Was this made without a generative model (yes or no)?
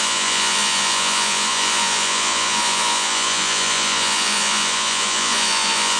no